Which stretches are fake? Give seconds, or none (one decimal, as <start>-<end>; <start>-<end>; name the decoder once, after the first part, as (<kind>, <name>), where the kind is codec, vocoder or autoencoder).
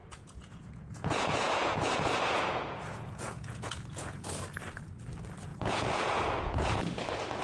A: 0.0-4.3 (vocoder, Vocos); 5.5-6.8